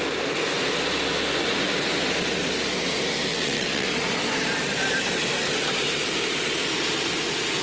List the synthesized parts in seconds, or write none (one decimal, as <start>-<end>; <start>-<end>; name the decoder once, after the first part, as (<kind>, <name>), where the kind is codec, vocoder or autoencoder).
3.3-3.9 (vocoder, WaveNeXt)